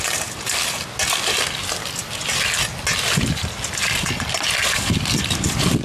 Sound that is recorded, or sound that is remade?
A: recorded